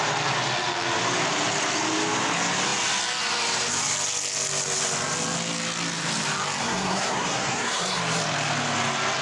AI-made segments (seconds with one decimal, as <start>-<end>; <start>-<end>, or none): 6.6-8.0